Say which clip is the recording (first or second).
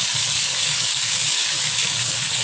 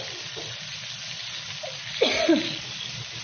second